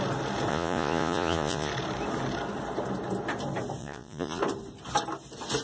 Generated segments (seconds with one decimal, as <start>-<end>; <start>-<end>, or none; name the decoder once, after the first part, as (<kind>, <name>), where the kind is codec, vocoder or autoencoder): 0.5-1.7 (vocoder, Vocos); 3.8-4.4